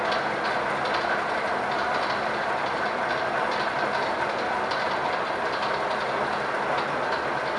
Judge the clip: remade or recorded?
recorded